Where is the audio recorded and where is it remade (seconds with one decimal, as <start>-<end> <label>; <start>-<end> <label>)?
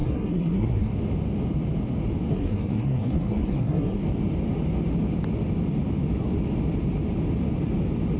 0.0-0.9 remade; 0.9-2.3 recorded; 2.3-4.0 remade; 4.0-8.2 recorded